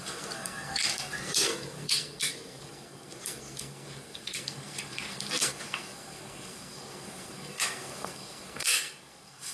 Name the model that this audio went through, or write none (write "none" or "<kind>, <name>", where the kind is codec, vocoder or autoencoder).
codec, SNAC